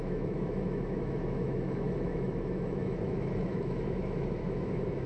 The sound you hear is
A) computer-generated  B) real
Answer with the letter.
A